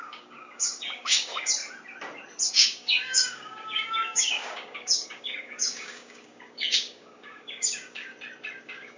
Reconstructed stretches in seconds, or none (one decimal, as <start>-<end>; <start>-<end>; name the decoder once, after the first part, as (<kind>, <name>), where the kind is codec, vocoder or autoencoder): 0.0-1.6 (codec, DAC); 2.5-8.1; 8.6-9.0

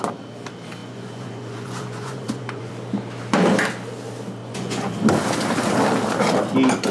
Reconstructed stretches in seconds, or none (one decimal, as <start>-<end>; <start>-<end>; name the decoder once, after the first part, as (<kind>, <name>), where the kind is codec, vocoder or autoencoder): 0.8-2.7 (vocoder, Vocos); 4.4-4.9

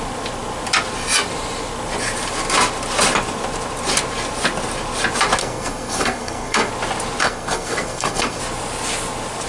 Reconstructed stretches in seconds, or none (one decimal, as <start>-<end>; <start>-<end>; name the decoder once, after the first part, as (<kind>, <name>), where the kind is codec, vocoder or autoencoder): 5.4-6.7 (codec, SNAC); 7.2-8.4

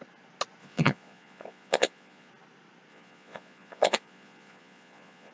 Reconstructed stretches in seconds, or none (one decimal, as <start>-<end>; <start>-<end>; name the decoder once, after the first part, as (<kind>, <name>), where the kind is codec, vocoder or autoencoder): 0.6-2.3 (vocoder, Vocos); 2.9-5.3

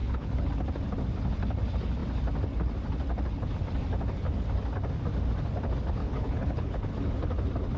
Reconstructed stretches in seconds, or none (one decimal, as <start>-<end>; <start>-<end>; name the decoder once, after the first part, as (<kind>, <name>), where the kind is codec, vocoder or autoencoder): 0.0-0.5 (codec, HILCodec); 6.0-6.9

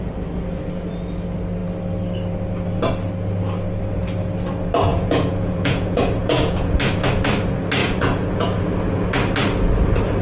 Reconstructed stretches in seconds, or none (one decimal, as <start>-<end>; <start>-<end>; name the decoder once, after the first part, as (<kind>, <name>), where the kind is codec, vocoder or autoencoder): 4.9-6.8 (vocoder, Vocos); 7.8-8.5